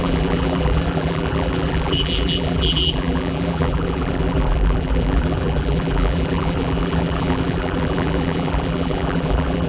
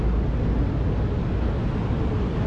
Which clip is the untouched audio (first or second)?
second